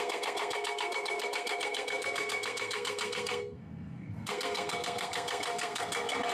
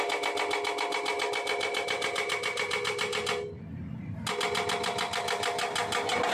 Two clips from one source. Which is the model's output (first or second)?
first